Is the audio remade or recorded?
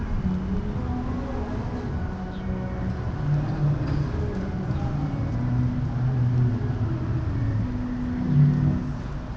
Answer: recorded